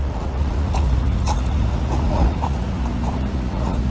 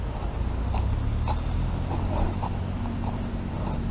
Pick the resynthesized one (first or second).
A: first